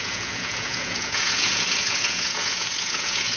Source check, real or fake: fake